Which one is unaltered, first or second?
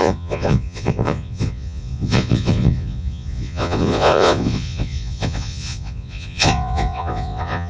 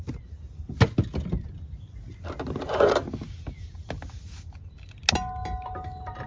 second